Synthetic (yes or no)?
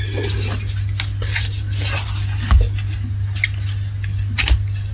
no